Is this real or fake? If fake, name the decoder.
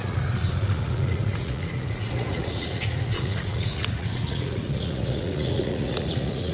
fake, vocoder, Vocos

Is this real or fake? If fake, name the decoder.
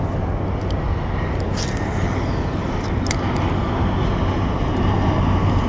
real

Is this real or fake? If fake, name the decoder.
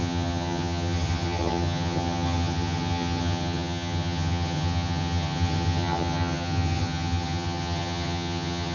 fake, vocoder, HiFi-GAN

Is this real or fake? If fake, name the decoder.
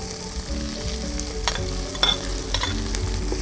real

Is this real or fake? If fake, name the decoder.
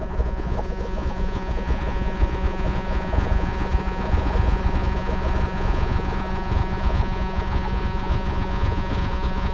fake, vocoder, Vocos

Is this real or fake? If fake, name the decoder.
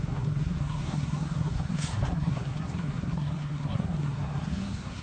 fake, codec, SNAC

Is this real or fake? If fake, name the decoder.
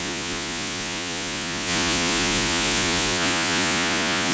fake, vocoder, Vocos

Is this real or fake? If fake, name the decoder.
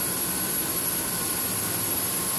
real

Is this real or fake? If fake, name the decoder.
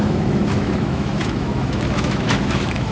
fake, autoencoder, DAC-VAE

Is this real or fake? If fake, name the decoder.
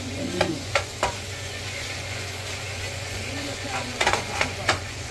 fake, vocoder, Vocos